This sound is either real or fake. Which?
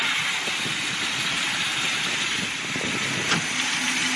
real